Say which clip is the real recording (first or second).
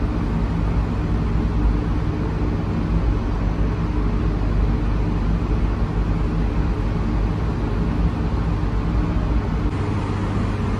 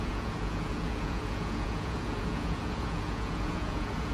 first